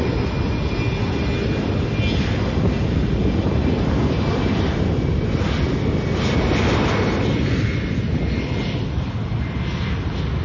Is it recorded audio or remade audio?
recorded